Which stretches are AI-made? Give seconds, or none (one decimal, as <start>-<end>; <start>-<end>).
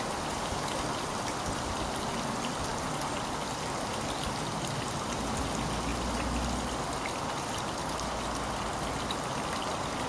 none